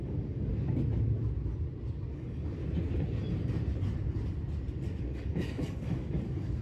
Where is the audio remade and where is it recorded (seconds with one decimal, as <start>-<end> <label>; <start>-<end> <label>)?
0.0-0.5 remade; 0.5-2.1 recorded; 2.1-2.6 remade; 2.6-5.0 recorded; 5.0-6.6 remade